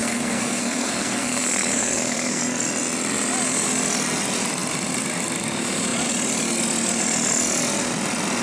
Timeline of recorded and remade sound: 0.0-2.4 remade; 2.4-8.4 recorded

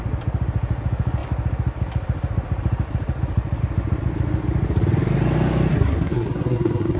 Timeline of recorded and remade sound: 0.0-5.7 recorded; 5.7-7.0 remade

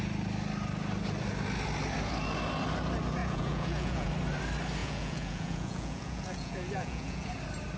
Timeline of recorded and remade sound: 0.0-3.2 recorded; 3.2-4.1 remade; 4.1-4.8 recorded; 4.8-7.3 remade; 7.3-7.8 recorded

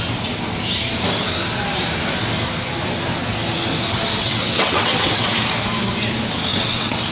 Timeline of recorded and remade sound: 0.0-4.2 recorded; 4.2-5.4 remade; 5.4-6.5 recorded; 6.5-7.1 remade